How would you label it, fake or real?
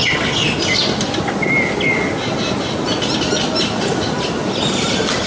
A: real